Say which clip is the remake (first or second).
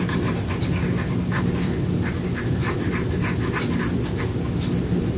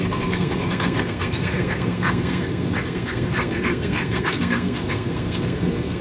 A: second